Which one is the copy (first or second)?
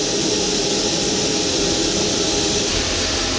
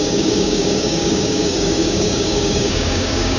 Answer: second